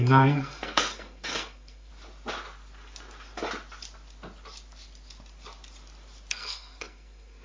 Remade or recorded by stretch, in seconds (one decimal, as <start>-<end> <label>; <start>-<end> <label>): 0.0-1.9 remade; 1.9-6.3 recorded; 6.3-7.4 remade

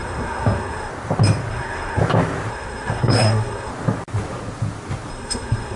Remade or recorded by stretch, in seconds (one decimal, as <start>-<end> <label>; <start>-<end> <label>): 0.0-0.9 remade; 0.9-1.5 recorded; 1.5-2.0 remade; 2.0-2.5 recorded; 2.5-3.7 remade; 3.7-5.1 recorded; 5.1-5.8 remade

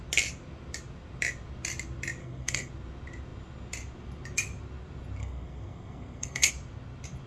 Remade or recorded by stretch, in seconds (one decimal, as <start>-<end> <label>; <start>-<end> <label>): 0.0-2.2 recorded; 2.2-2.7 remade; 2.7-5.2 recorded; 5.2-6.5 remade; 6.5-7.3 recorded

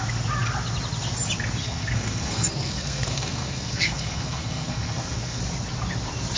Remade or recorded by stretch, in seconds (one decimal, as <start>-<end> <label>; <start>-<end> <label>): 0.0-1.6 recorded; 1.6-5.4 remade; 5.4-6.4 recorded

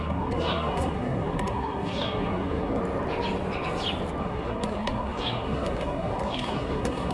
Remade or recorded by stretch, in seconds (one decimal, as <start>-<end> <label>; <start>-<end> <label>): 0.0-2.8 remade; 2.8-4.2 recorded; 4.2-7.1 remade